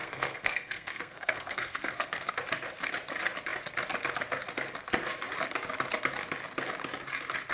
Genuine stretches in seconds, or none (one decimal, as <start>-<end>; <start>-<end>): 2.3-7.5